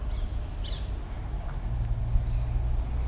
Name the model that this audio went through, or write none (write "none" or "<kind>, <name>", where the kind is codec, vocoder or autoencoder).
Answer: none